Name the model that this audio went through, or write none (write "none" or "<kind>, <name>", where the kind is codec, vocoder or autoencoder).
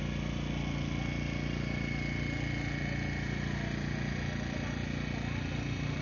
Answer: none